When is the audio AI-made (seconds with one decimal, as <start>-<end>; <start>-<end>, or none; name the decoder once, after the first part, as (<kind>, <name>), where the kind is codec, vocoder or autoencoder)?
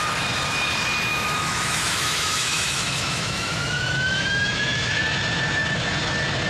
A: 1.1-5.0 (autoencoder, DAC-VAE)